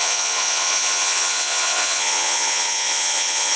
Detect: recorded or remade remade